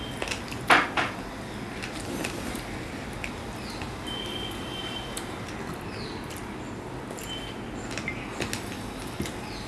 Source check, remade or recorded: recorded